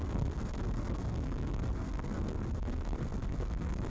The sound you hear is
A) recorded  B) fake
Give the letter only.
B